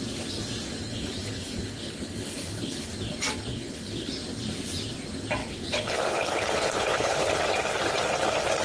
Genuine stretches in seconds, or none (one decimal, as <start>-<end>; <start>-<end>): 0.0-0.8; 2.9-3.5; 4.1-5.4; 7.3-8.6